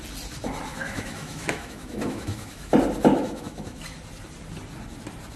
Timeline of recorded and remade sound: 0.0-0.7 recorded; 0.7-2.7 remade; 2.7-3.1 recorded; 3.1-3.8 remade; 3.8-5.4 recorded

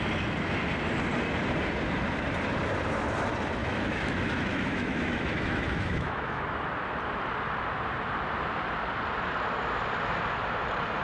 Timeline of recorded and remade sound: 0.0-3.6 recorded; 3.6-6.4 remade; 6.4-11.0 recorded

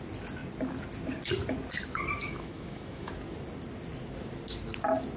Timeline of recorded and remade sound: 0.0-2.2 recorded; 2.2-3.1 remade; 3.1-5.2 recorded

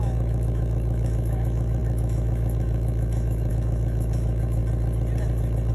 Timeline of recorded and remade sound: 0.0-4.6 remade; 4.6-5.7 recorded

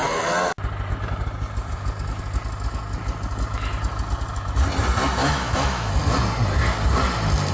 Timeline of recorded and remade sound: 0.0-5.2 recorded; 5.2-5.9 remade; 5.9-7.5 recorded

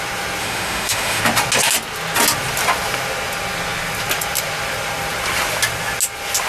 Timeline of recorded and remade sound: 0.0-0.4 recorded; 0.4-1.2 remade; 1.2-6.5 recorded

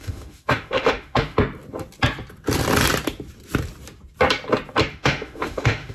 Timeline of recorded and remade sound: 0.0-1.4 remade; 1.4-4.9 recorded; 4.9-5.9 remade